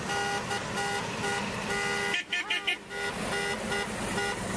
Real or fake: real